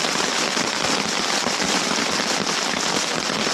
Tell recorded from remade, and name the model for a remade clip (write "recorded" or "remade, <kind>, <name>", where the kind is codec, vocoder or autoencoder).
recorded